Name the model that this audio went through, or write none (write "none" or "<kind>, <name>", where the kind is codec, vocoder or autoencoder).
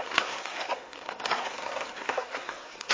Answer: codec, SNAC